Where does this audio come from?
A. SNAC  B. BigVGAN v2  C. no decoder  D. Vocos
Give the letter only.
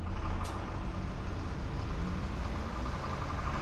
C